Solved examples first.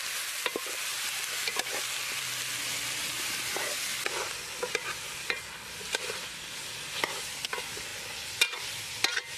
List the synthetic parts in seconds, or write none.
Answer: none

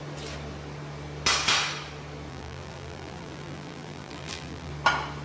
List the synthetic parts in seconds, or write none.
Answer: 2.3-4.7 (vocoder, BigVGAN v2)

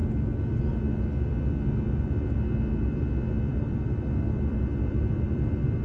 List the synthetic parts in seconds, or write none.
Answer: 3.5-5.8 (vocoder, BigVGAN v2)